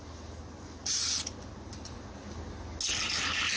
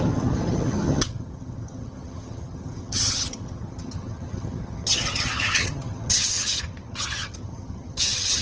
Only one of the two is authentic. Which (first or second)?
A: first